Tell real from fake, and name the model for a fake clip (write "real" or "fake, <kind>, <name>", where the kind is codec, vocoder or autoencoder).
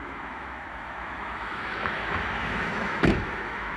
fake, autoencoder, DAC-VAE